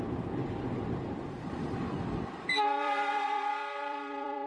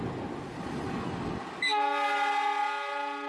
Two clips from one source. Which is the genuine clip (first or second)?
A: second